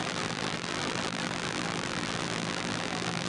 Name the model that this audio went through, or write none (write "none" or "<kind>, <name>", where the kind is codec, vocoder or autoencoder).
vocoder, BigVGAN v2